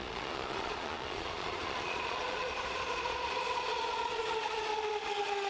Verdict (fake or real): fake